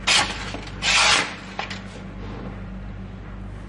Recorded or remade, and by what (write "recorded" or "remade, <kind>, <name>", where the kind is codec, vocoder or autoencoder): recorded